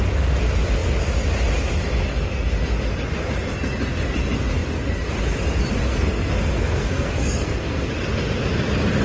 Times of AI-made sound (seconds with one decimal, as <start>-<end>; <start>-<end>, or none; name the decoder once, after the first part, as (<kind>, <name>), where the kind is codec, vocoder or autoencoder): 5.8-7.9 (codec, SNAC)